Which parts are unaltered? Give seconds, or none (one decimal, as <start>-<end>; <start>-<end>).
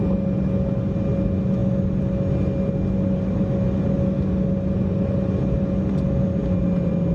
0.0-7.1